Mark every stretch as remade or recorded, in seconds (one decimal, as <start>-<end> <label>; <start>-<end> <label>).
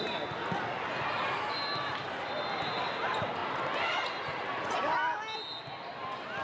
0.0-6.4 recorded